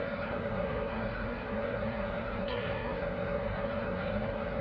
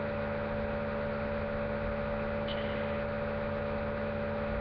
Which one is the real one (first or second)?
second